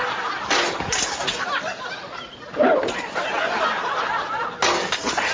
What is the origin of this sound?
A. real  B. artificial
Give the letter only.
A